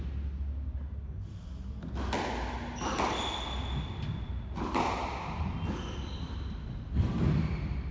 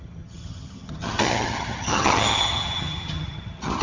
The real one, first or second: first